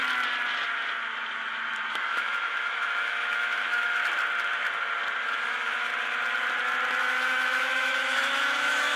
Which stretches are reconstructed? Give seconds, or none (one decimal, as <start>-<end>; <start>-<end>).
1.9-4.0; 5.2-5.9; 7.0-9.0